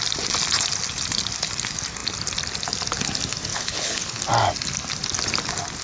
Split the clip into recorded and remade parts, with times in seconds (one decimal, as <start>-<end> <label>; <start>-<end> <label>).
0.0-3.5 recorded; 3.5-4.2 remade; 4.2-5.8 recorded